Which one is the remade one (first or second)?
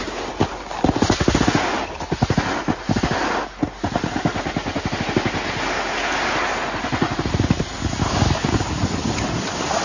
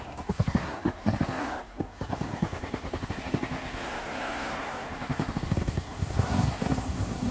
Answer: second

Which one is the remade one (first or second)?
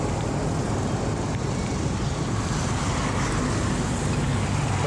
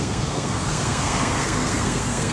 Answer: second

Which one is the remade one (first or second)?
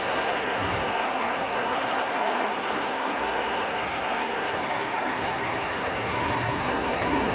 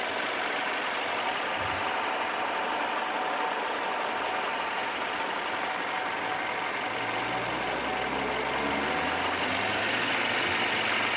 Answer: first